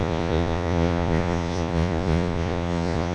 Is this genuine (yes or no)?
no